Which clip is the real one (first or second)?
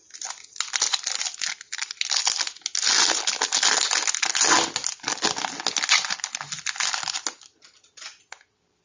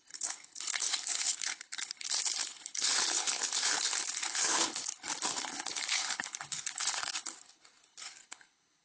first